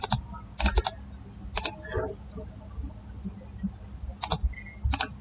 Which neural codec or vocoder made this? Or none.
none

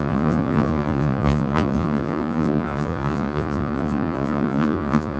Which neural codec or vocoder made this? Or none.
vocoder, Vocos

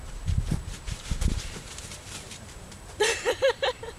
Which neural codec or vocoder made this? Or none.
vocoder, BigVGAN v2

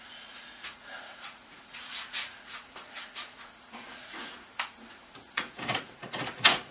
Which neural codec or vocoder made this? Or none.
vocoder, Vocos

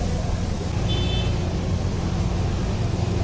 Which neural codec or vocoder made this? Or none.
none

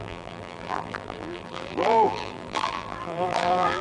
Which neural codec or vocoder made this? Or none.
vocoder, BigVGAN v2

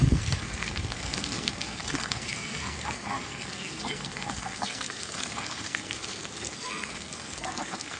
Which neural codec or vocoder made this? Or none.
codec, SNAC